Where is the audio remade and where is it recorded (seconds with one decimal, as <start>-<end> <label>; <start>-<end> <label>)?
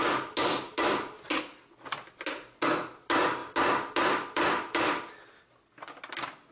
0.0-6.5 recorded